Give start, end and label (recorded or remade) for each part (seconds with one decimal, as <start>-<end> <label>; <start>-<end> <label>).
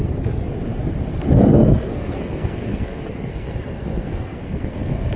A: 0.0-0.5 remade; 0.5-1.1 recorded; 1.1-5.2 remade